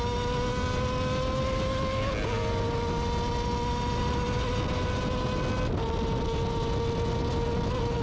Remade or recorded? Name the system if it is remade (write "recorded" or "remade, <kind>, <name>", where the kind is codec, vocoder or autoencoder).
recorded